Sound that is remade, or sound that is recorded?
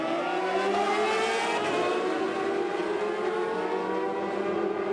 recorded